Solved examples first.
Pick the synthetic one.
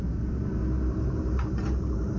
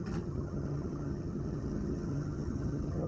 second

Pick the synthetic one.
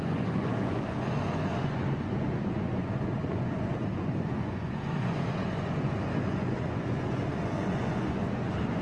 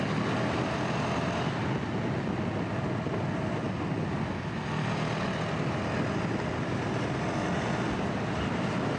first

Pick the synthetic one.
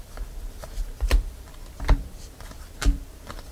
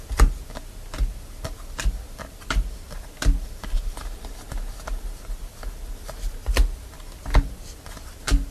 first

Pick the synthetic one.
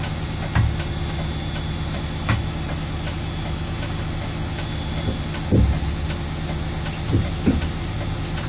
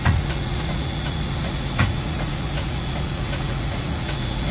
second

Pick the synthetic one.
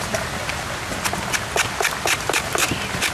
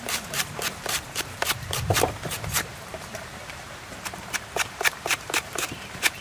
second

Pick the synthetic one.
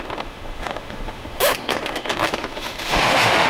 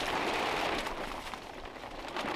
first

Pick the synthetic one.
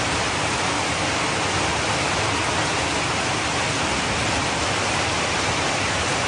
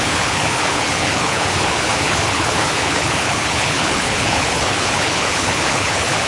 second